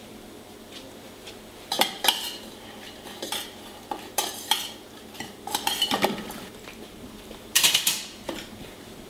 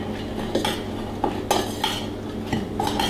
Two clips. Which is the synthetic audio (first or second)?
first